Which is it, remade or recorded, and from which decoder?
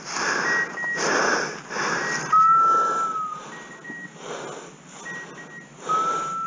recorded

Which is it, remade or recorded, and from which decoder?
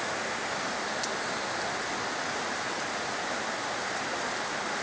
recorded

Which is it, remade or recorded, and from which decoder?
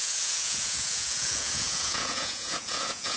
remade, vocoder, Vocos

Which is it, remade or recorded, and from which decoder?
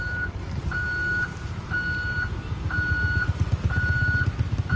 recorded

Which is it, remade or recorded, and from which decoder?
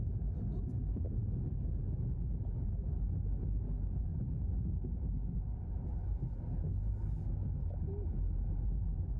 recorded